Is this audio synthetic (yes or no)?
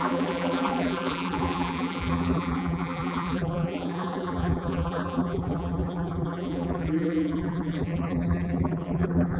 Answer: yes